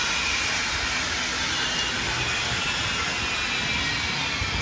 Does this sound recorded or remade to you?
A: recorded